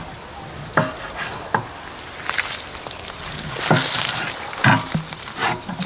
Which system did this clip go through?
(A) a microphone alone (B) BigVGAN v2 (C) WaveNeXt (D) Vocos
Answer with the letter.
A